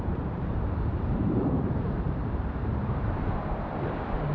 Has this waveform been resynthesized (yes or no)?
yes